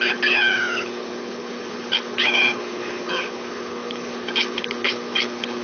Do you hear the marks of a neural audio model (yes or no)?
yes